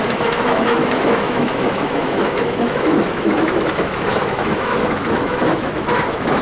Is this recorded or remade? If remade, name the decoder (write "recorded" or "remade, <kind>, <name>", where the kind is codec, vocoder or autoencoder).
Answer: remade, autoencoder, DAC-VAE